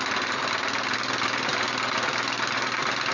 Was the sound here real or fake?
real